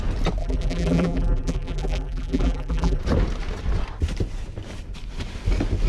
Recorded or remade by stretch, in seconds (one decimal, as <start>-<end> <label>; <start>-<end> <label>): 0.0-0.4 recorded; 0.4-3.0 remade; 3.0-5.9 recorded